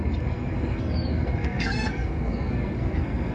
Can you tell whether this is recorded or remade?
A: remade